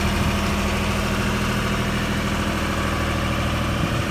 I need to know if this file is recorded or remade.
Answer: recorded